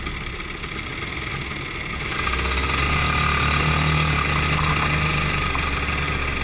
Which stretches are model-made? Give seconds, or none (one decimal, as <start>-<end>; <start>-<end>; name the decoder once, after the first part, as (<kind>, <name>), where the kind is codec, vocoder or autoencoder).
none

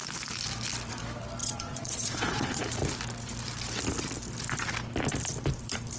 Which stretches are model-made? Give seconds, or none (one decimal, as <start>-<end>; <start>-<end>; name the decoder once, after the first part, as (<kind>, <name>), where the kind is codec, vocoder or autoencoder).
1.4-2.6 (vocoder, Vocos)

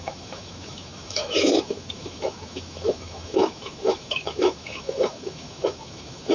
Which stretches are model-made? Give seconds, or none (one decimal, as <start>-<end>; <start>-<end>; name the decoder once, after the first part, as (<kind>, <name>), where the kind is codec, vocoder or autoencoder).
0.0-6.3 (autoencoder, DAC-VAE)